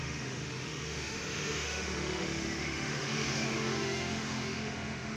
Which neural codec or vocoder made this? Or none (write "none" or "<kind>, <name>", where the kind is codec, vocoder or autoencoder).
autoencoder, DAC-VAE